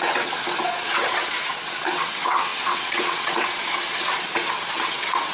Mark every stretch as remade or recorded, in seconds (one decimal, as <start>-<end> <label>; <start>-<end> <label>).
0.0-5.3 remade